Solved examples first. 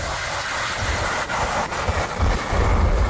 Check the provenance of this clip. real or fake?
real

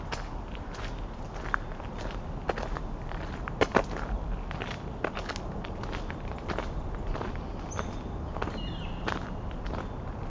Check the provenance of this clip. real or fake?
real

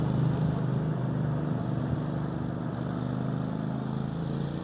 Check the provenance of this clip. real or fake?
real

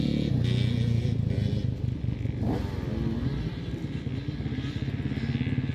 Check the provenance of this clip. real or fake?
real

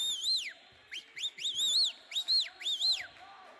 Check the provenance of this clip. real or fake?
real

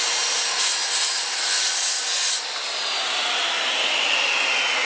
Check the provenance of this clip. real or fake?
real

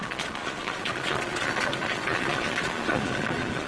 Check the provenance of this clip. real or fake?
fake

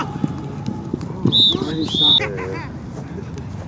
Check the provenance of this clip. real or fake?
real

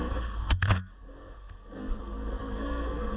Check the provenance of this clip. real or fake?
fake